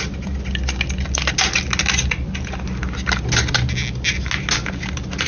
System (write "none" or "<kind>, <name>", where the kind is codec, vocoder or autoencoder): none